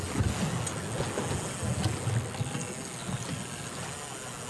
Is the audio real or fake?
real